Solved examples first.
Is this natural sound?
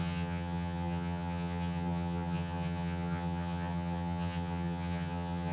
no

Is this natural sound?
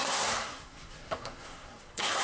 no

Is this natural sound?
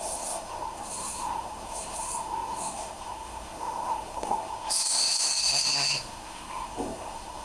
no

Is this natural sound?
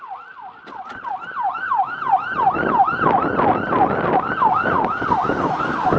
yes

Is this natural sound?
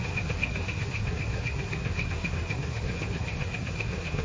no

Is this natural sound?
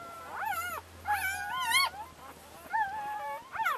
yes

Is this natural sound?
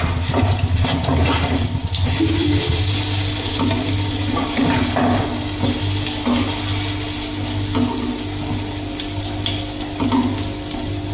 yes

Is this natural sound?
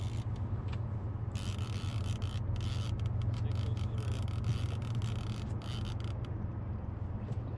yes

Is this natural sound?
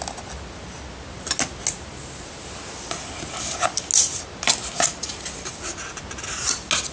yes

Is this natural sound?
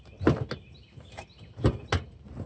yes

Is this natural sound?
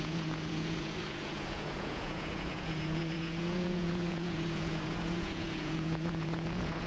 no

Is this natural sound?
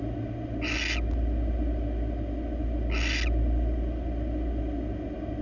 yes